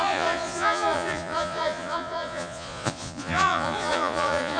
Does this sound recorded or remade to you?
remade